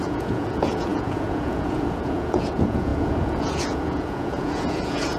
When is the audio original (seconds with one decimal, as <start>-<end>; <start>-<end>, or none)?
none